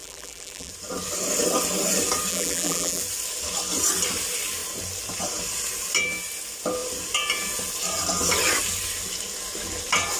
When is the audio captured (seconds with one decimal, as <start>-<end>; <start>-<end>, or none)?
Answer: 0.7-2.3; 3.0-10.2